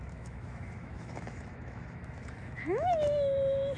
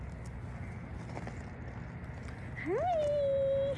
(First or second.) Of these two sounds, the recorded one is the second